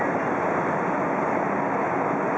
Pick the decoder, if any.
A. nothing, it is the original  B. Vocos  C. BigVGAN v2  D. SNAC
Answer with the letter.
A